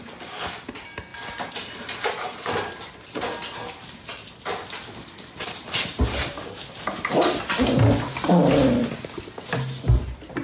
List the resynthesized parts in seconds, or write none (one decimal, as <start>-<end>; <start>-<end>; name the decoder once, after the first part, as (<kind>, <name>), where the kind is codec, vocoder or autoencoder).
none